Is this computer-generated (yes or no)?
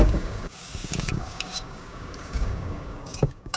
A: yes